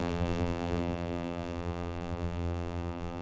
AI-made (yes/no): yes